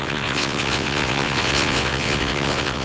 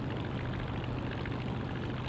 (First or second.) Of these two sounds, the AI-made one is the first